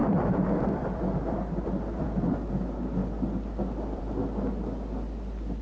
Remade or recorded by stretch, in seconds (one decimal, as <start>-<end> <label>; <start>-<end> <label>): 0.0-2.5 remade; 2.5-3.0 recorded; 3.0-4.0 remade; 4.0-5.6 recorded